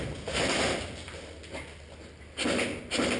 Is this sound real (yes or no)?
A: yes